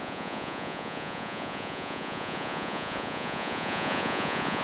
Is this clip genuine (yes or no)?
no